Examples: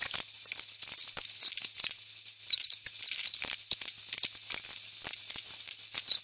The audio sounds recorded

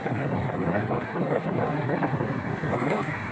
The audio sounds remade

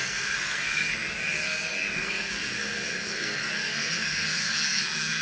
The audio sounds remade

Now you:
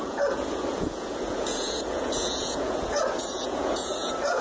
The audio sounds remade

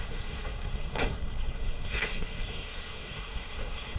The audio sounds remade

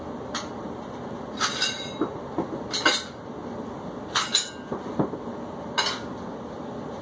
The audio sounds recorded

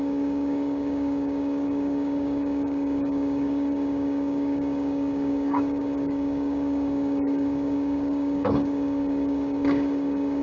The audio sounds remade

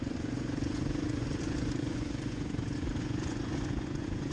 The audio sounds remade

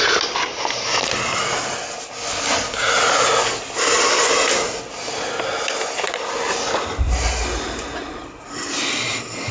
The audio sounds recorded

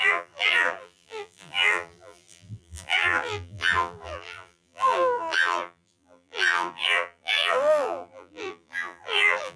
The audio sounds remade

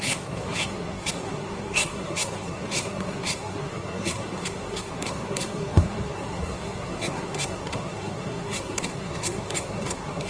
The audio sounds remade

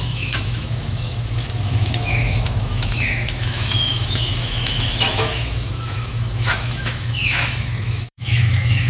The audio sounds remade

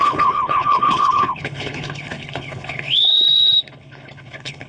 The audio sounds remade